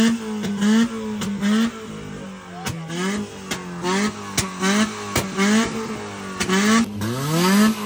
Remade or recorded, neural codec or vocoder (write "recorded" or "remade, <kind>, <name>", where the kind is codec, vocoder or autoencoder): recorded